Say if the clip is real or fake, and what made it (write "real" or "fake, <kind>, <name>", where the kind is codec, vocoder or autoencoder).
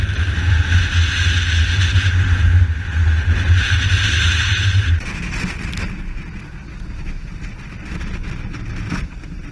real